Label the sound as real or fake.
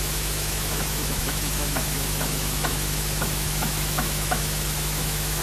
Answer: fake